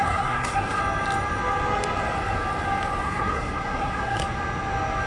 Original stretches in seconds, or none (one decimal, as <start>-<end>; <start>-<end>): 0.8-3.0; 4.2-5.1